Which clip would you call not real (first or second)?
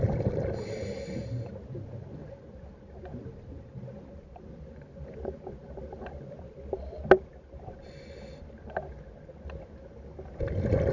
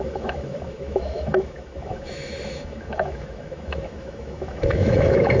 second